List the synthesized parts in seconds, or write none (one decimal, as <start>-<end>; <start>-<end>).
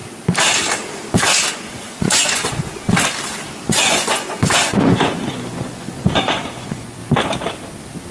1.5-2.7; 3.6-7.0